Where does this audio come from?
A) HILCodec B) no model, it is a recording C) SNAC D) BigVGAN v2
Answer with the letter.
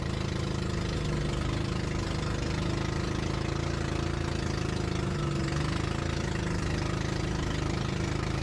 B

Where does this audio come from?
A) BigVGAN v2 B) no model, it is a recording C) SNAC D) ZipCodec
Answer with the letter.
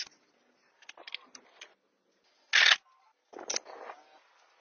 B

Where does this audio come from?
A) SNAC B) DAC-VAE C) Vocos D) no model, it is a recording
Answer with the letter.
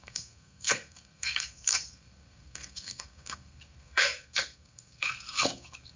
A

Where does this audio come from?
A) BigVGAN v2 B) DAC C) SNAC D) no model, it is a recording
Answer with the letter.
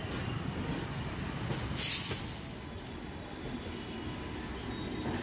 D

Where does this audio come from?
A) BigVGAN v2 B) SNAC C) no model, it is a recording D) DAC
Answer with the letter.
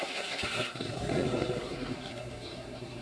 B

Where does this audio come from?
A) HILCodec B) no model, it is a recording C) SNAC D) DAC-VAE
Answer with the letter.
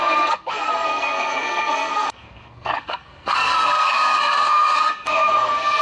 C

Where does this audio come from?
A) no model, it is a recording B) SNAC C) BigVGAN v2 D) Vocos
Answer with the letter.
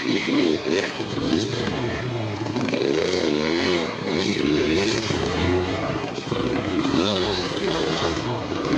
B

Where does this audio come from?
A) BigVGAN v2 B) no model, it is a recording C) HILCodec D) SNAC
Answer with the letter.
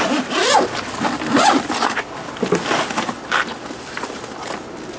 B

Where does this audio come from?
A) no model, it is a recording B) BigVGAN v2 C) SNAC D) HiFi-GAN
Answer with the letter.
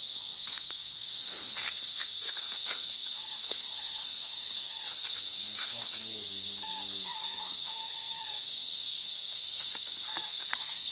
C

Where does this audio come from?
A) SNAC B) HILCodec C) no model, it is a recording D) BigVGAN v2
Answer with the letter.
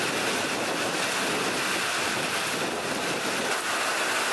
C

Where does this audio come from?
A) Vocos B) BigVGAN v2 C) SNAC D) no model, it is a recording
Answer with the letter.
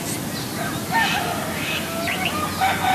D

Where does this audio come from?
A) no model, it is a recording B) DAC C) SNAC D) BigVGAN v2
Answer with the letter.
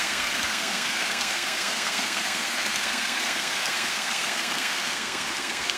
C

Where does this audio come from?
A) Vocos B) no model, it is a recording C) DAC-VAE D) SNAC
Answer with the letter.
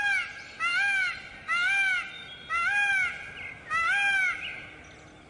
B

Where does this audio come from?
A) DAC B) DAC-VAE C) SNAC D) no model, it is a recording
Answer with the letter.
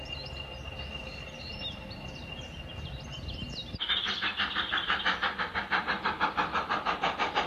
D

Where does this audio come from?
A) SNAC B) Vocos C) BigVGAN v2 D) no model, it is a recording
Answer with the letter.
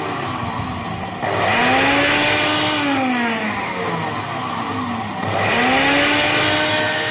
D